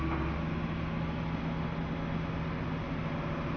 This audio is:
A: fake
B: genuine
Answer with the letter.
B